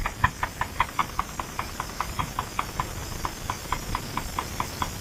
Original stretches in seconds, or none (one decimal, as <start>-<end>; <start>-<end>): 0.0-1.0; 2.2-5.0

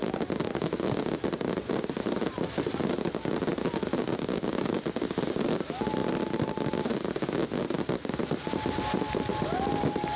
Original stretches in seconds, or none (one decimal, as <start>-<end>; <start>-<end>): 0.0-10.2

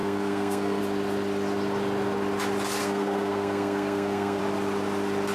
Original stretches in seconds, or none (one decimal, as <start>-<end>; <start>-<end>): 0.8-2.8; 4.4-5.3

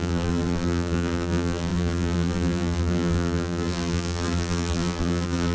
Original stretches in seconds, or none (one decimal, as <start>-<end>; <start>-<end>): none

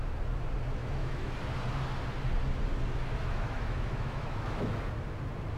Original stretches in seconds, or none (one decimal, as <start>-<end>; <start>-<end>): 0.0-0.8; 1.3-3.2; 4.7-5.6

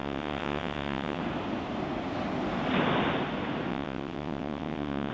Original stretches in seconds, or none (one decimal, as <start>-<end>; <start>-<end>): 1.2-3.7